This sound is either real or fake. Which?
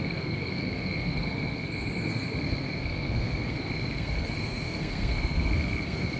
fake